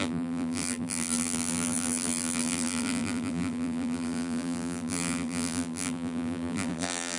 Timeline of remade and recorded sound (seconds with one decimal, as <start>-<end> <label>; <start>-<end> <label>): 0.0-7.2 remade